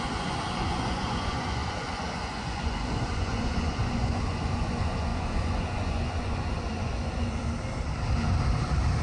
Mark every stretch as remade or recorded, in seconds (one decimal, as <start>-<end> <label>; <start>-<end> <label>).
0.0-7.4 remade; 7.4-9.0 recorded